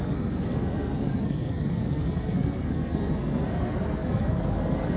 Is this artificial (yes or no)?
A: yes